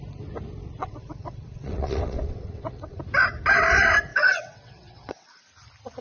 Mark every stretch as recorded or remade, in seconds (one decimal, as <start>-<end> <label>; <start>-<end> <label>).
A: 0.0-0.8 recorded; 0.8-3.0 remade; 3.0-4.1 recorded; 4.1-5.4 remade; 5.4-6.0 recorded